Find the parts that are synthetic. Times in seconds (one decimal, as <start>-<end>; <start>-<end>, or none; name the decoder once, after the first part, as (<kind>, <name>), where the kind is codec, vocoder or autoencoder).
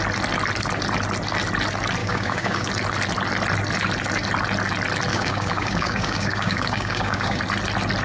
2.0-2.7 (codec, DAC); 5.1-7.4